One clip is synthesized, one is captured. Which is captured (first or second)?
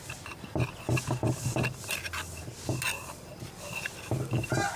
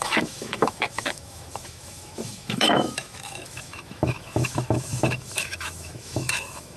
first